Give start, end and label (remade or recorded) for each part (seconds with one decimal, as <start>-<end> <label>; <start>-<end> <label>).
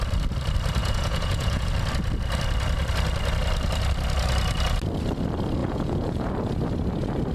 0.0-0.8 recorded; 0.8-1.7 remade; 1.7-5.6 recorded; 5.6-6.3 remade; 6.3-7.3 recorded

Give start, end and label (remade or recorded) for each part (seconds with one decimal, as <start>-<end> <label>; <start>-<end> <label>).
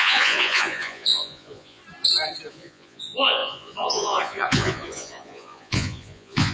0.0-1.8 remade; 1.8-2.5 recorded; 2.5-6.5 remade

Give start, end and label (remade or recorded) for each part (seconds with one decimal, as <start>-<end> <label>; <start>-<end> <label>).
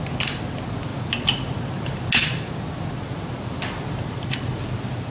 0.0-5.1 recorded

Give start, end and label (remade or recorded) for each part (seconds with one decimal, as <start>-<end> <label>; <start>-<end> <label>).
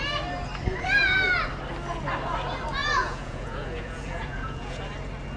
0.0-2.8 recorded; 2.8-4.8 remade; 4.8-5.4 recorded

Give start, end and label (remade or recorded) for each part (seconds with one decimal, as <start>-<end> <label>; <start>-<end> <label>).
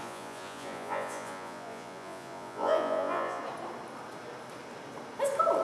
0.0-3.4 remade; 3.4-5.6 recorded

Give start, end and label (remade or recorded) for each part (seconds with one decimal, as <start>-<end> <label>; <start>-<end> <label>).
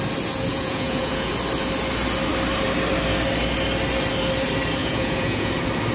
0.0-0.5 recorded; 0.5-1.3 remade; 1.3-4.8 recorded; 4.8-5.5 remade; 5.5-5.9 recorded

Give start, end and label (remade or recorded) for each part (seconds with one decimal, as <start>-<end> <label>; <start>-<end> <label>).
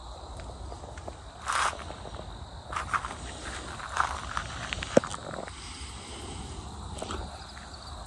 0.0-8.1 recorded